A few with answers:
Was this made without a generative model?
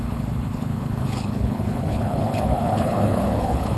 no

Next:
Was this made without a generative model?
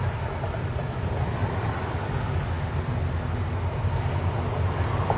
yes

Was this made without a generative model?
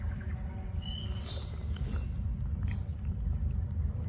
yes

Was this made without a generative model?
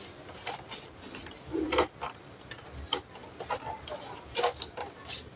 yes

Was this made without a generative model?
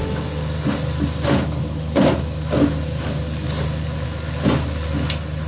yes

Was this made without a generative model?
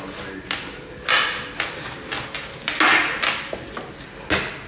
yes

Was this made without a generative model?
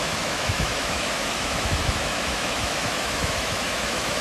no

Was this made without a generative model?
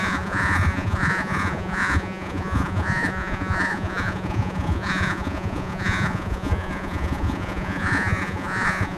no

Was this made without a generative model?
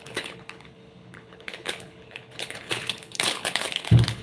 no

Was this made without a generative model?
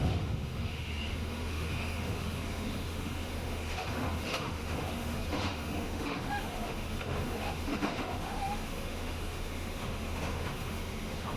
no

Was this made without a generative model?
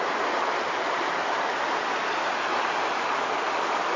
yes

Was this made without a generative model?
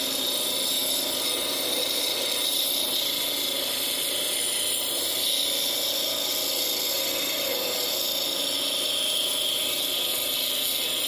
yes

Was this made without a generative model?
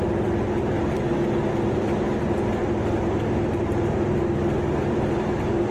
yes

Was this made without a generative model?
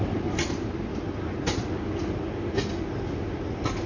yes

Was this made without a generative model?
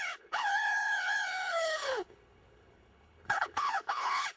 no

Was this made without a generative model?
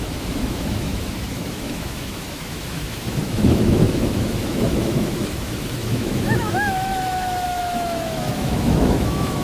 no